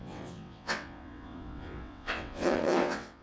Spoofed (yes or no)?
yes